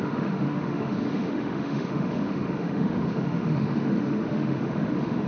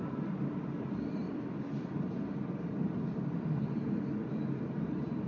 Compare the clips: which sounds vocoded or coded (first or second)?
first